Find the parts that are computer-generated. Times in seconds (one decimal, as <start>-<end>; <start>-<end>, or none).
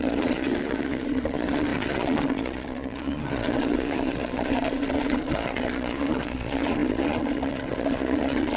0.0-8.6